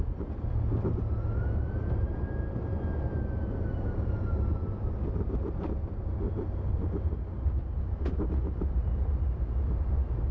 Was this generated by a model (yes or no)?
no